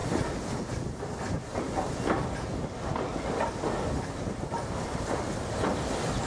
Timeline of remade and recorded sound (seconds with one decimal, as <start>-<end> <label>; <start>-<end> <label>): 0.0-6.3 recorded